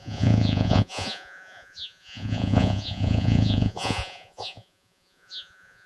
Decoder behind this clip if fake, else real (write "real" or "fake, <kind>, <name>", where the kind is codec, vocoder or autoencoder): fake, vocoder, Vocos